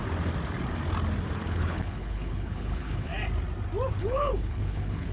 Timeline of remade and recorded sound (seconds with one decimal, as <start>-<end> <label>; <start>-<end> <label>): 0.0-1.4 recorded; 1.4-3.1 remade; 3.1-3.9 recorded; 3.9-5.1 remade